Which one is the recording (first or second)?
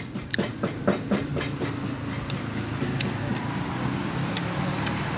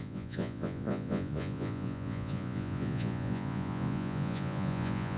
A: first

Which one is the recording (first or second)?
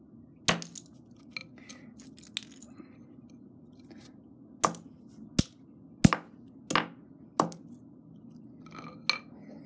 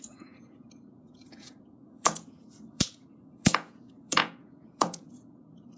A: first